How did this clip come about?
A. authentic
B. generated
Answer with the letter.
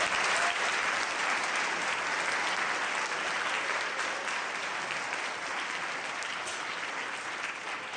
A